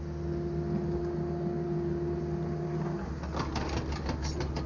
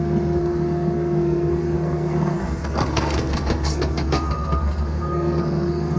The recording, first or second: first